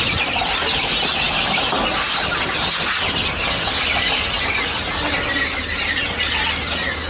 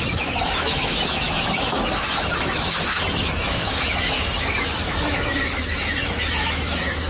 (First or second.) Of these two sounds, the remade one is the second